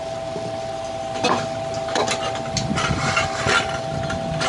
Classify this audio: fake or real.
real